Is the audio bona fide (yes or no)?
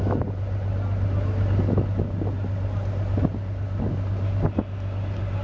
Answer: yes